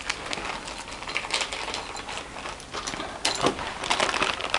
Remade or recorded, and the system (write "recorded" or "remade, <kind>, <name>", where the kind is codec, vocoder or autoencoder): recorded